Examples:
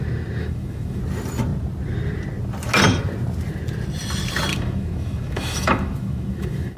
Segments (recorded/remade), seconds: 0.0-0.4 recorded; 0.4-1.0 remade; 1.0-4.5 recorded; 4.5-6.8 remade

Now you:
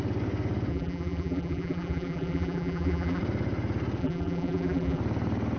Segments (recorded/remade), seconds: 0.0-0.7 recorded; 0.7-3.2 remade; 3.2-4.0 recorded; 4.0-5.0 remade; 5.0-5.6 recorded

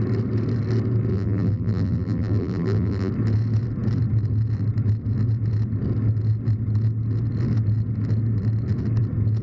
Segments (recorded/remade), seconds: 0.0-1.1 recorded; 1.1-3.1 remade; 3.1-9.4 recorded